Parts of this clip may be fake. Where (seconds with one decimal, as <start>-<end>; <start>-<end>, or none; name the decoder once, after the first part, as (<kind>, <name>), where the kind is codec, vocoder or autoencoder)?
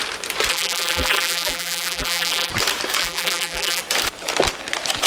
0.5-2.5 (vocoder, BigVGAN v2); 3.0-3.8